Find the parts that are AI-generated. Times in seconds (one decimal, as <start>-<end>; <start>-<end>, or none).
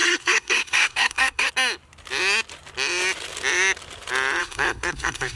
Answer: 0.0-1.5; 4.4-5.4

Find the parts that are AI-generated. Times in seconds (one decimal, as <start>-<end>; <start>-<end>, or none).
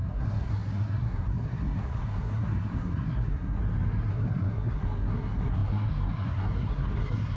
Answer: 0.0-3.6; 4.1-7.4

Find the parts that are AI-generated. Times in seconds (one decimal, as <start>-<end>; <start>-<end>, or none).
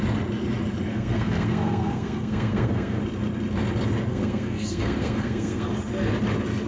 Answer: 0.9-3.0; 4.1-5.7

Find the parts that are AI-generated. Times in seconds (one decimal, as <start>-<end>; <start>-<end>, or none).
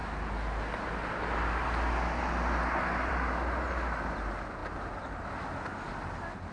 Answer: none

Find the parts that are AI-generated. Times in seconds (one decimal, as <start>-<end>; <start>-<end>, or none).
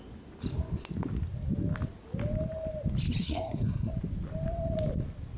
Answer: 3.2-3.9